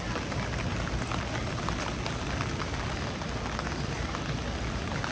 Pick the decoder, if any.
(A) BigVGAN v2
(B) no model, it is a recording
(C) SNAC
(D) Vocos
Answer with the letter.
B